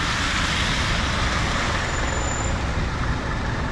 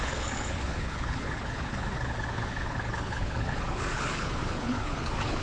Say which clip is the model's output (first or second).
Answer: second